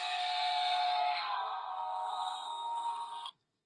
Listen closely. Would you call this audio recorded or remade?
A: remade